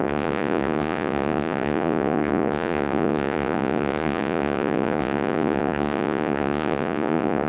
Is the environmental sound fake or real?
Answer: fake